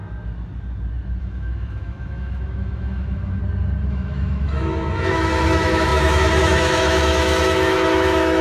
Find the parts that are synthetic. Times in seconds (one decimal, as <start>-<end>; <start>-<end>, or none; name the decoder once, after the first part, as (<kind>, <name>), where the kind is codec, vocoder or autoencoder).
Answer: 1.2-3.4 (autoencoder, DAC-VAE); 3.9-8.4